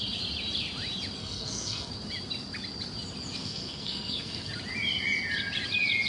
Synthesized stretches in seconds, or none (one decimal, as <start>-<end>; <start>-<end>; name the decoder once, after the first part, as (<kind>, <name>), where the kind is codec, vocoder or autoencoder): 1.2-1.9 (codec, SNAC); 3.4-4.5

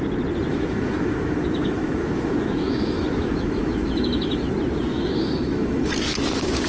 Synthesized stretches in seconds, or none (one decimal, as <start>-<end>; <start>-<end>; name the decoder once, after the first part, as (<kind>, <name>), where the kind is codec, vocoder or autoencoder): 0.5-4.5 (autoencoder, DAC-VAE); 4.9-5.9

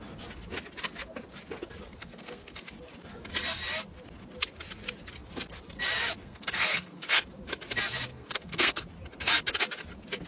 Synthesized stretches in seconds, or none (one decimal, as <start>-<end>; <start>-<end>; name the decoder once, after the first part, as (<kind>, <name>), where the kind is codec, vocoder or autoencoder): 2.0-2.6 (codec, SNAC); 6.2-7.2; 8.1-8.8

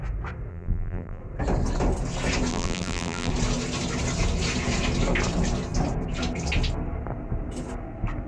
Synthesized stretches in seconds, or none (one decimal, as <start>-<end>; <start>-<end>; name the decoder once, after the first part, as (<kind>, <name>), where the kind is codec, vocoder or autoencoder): 0.5-1.2 (vocoder, BigVGAN v2); 2.5-3.3

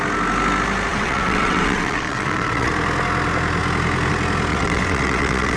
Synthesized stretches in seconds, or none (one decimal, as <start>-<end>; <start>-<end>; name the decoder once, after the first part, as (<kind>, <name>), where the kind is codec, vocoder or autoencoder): 0.9-2.7 (vocoder, WaveNeXt); 4.5-5.6

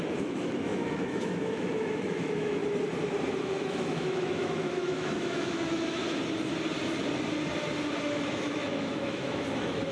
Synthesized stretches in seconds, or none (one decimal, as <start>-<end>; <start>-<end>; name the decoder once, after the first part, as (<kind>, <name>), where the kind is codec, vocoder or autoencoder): 0.0-2.6 (autoencoder, DAC-VAE); 3.4-6.0; 8.0-9.9

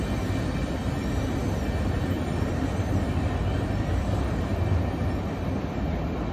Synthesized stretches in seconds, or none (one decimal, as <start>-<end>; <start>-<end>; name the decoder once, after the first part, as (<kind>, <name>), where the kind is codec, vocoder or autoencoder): none

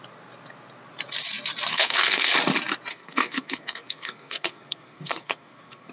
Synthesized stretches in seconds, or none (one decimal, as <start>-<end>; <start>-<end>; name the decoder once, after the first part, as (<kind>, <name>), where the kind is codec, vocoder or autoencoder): 1.7-2.3 (codec, SNAC); 2.9-5.9